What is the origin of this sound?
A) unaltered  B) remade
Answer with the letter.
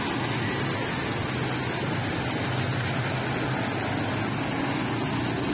A